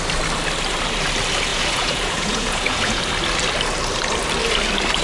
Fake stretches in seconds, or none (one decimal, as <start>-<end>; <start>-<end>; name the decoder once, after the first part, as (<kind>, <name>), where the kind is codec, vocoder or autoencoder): 1.5-3.0 (vocoder, Vocos)